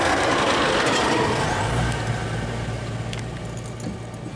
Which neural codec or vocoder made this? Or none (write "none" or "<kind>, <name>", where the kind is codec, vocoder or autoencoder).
none